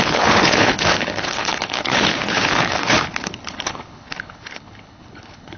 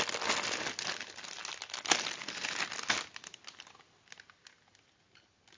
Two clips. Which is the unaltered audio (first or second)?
second